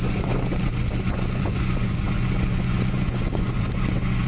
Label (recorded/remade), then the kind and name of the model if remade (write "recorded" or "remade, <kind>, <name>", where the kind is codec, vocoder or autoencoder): remade, vocoder, Vocos